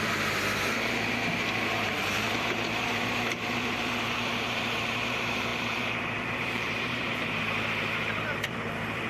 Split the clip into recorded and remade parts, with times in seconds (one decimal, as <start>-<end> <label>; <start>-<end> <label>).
0.0-9.1 remade